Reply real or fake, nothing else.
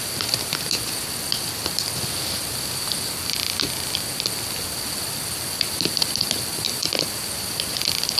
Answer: real